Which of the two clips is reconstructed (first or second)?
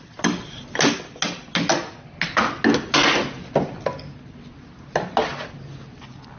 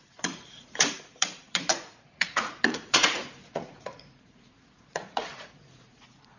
second